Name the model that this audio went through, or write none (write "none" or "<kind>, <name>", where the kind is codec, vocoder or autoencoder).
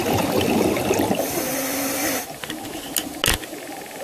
none